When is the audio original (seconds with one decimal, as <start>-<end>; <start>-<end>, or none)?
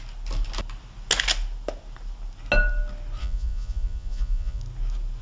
0.0-3.2; 4.6-5.2